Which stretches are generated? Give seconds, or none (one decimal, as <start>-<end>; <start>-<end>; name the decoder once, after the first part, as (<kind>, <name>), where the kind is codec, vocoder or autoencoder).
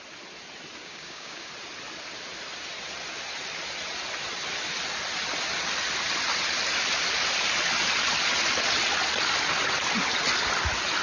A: 0.8-1.5 (codec, DAC)